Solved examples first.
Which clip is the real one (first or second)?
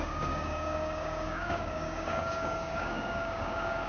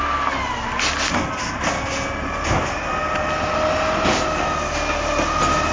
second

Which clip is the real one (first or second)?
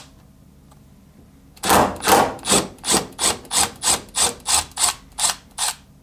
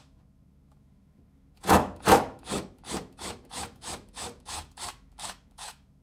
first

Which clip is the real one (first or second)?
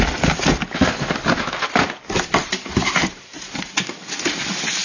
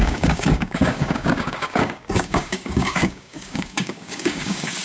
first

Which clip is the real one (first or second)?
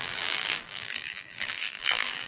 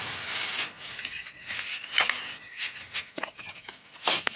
second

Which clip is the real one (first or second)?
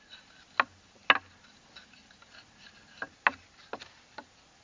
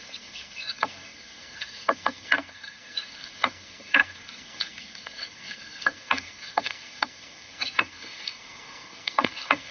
first